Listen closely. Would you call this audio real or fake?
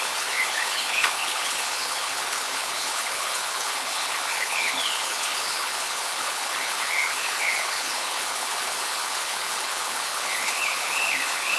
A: fake